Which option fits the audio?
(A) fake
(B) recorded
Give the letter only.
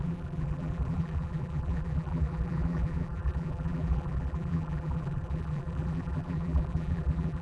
A